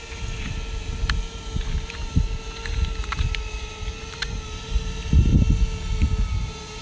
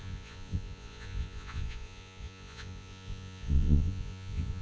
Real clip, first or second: first